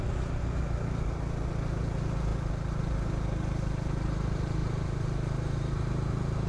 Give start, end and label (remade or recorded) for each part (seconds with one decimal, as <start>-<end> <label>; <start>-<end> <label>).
0.0-4.6 recorded; 4.6-6.5 remade